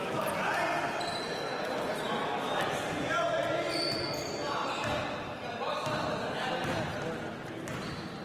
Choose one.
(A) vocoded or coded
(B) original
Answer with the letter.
B